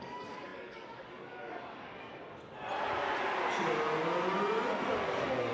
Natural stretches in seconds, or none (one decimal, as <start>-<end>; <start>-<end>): 2.1-4.9